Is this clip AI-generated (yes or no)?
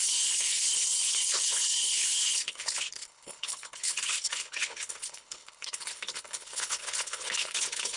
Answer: yes